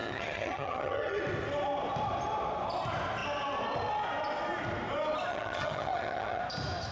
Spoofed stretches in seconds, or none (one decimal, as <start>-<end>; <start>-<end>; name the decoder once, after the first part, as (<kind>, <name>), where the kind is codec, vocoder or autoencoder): 0.0-1.2 (vocoder, HiFi-GAN); 5.3-6.4